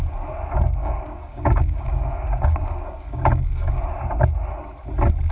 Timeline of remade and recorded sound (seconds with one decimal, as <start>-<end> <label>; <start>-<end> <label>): 0.0-0.8 recorded; 0.8-3.7 remade; 3.7-5.3 recorded